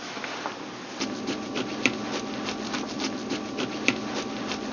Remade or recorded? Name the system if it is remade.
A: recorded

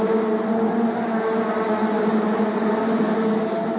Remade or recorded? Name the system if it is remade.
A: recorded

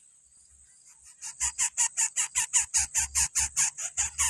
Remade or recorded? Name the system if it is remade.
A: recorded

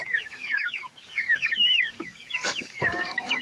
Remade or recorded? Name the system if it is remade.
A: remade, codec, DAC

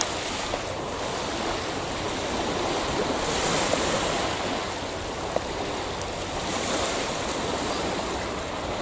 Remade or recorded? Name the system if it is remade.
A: recorded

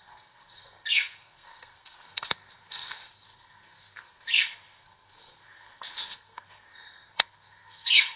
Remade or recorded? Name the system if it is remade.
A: remade, codec, SNAC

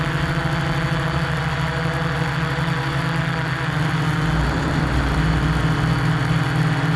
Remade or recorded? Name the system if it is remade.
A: recorded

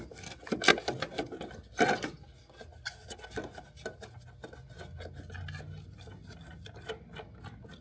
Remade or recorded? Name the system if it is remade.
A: recorded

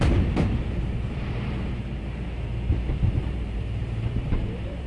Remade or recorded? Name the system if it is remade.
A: remade, vocoder, BigVGAN v2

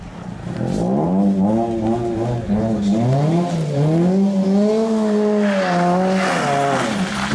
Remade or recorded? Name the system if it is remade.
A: recorded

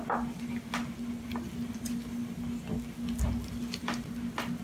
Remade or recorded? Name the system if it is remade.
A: recorded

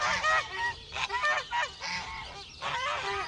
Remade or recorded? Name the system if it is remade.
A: recorded